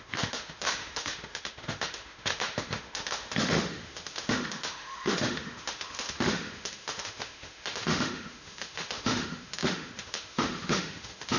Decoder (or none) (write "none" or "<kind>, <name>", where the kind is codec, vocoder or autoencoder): autoencoder, DAC-VAE